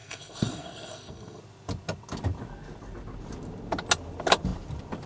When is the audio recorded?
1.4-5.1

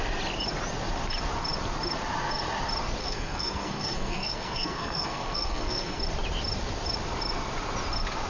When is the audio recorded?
0.0-3.0; 6.0-8.3

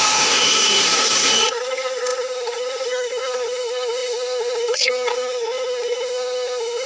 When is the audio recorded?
none

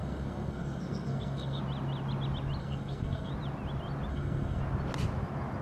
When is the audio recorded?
1.6-2.6; 3.3-4.1; 4.6-5.6

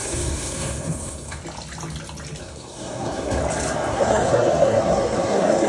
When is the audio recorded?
1.4-2.4; 3.4-3.9

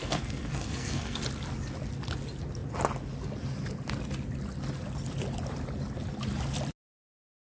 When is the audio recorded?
1.2-7.5

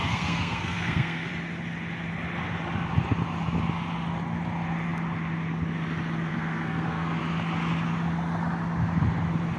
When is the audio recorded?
1.3-6.3; 7.2-9.6

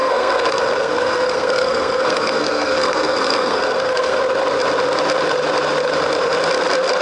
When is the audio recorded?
4.2-7.0